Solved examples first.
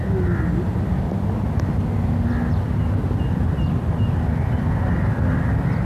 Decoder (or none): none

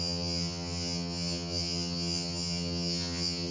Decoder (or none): vocoder, HiFi-GAN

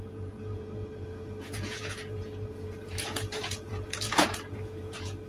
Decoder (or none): vocoder, Vocos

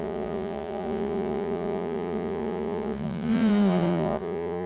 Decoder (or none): vocoder, Vocos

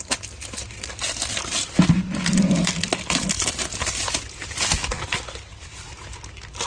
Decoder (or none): none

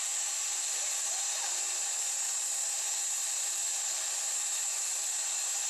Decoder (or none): none